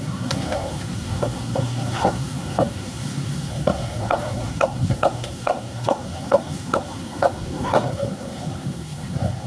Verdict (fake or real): fake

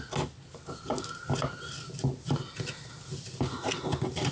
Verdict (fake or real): real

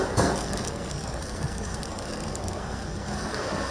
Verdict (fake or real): fake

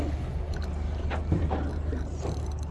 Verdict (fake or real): real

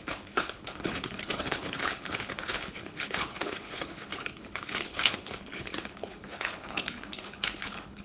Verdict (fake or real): fake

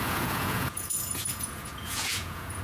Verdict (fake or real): fake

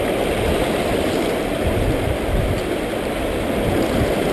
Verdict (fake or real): real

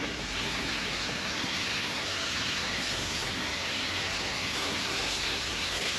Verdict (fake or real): fake